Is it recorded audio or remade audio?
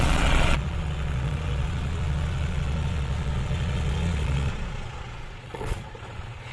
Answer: remade